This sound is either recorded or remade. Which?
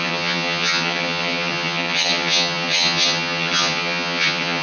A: remade